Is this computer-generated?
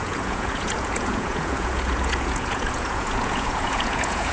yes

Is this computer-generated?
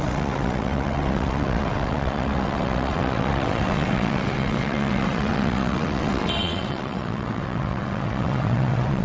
yes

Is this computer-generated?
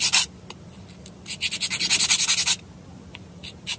no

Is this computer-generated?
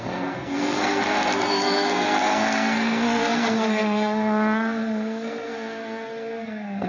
yes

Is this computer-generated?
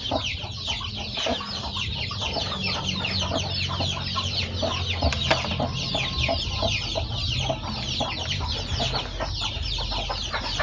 no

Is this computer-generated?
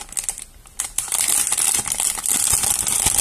no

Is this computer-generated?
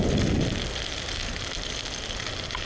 no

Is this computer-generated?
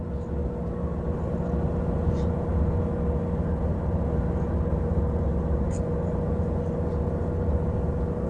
no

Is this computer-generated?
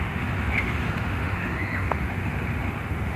yes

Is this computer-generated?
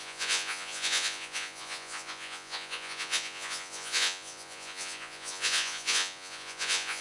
yes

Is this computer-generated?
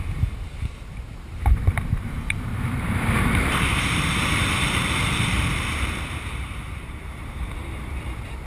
yes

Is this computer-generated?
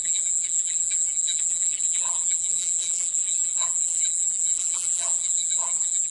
yes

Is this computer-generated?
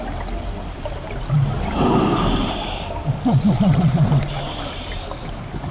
no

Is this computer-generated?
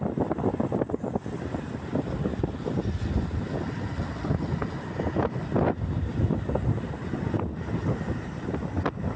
no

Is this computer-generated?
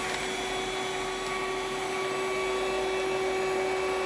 no